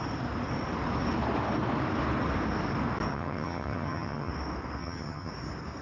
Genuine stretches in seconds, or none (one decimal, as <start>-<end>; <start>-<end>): 0.0-3.1; 4.3-4.8; 5.3-5.8